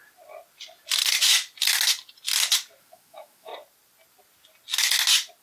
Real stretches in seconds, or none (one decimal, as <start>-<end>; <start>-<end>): 0.0-2.8; 3.5-5.4